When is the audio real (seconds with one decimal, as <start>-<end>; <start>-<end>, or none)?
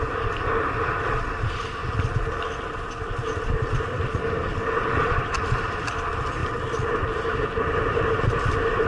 1.8-3.9; 6.4-8.2